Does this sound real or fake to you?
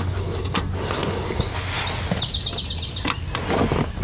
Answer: real